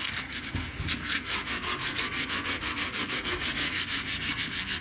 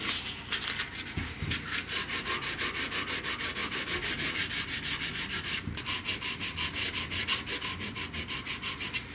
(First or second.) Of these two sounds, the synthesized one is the first